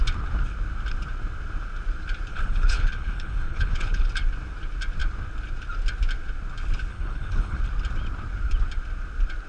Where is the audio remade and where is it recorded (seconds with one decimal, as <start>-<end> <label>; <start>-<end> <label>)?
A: 0.0-2.3 recorded; 2.3-4.1 remade; 4.1-6.9 recorded; 6.9-7.6 remade; 7.6-9.5 recorded